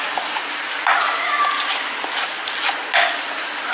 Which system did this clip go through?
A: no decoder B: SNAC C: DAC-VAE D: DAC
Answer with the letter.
A